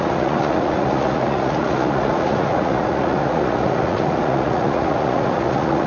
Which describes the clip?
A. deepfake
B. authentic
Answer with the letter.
A